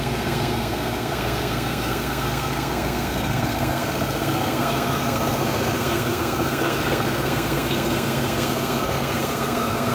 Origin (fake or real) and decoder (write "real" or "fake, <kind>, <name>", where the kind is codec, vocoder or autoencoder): fake, codec, SNAC